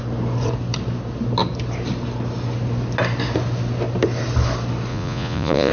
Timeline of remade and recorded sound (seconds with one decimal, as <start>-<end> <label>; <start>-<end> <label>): 0.0-4.9 recorded; 4.9-5.7 remade